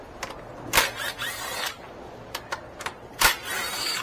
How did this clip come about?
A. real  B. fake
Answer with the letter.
B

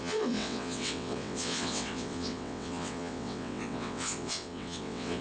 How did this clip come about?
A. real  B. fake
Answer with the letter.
B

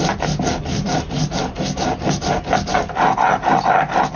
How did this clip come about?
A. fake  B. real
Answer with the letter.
B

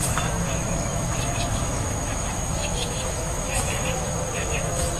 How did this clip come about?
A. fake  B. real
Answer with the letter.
A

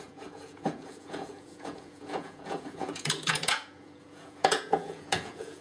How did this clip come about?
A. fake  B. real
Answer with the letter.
A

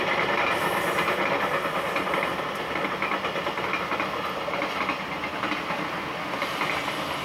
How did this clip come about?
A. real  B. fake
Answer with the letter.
A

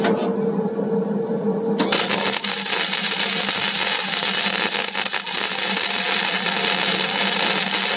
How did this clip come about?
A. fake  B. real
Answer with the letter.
B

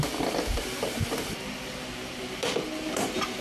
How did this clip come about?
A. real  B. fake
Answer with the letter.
B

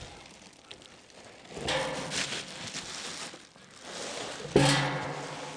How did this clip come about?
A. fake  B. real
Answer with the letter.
B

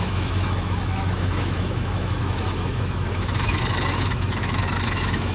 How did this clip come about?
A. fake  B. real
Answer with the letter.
A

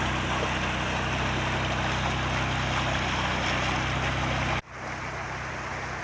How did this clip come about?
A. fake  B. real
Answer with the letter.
B